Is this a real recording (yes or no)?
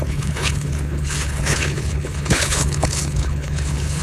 no